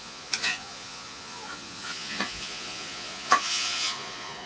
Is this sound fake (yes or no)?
yes